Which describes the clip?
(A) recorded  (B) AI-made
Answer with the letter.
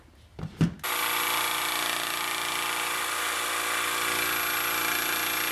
A